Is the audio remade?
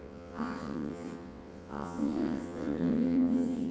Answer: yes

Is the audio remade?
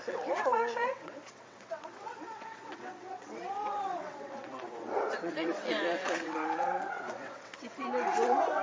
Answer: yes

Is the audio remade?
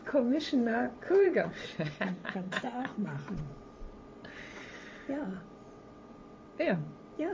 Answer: yes